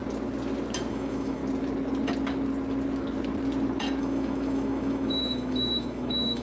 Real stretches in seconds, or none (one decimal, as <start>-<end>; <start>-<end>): 0.0-0.9; 1.4-4.0